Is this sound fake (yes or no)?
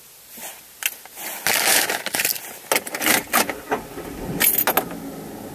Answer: no